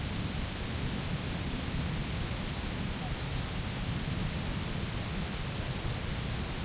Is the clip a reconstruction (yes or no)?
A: no